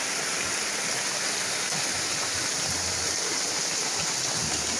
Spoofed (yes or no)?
no